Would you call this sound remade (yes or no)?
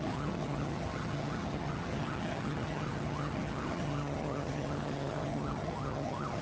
yes